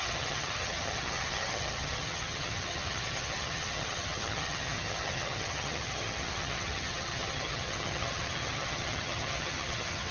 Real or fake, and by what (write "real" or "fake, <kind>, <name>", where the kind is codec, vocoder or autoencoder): fake, vocoder, HiFi-GAN